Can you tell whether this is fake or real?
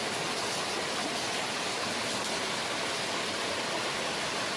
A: real